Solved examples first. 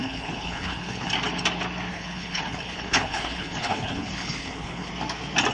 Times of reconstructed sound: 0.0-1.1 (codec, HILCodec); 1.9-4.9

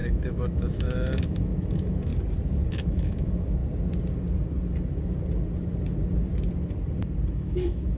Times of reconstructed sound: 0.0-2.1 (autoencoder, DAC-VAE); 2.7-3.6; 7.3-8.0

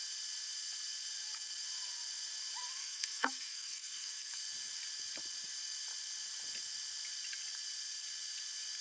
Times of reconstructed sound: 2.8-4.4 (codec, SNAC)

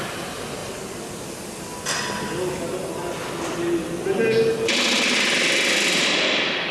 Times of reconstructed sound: none

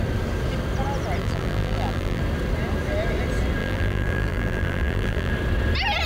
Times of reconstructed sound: 1.2-2.2 (vocoder, BigVGAN v2); 3.6-5.3

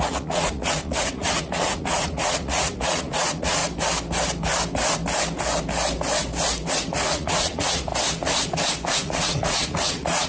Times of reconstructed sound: 0.0-3.6 (vocoder, Vocos); 6.7-7.9; 8.9-10.3

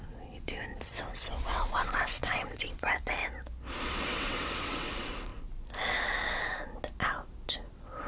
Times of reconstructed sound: 0.0-3.2 (vocoder, WaveNeXt); 3.8-5.3; 7.5-8.1

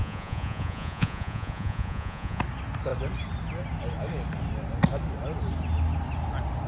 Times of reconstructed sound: 0.0-2.4 (vocoder, Vocos)